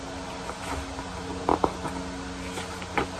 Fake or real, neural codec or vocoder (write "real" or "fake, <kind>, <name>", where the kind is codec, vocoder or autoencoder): real